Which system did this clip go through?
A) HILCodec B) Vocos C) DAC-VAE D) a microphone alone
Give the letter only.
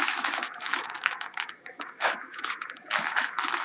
C